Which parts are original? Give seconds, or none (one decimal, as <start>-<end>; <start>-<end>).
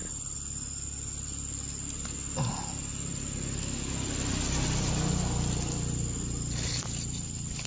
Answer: 0.0-7.7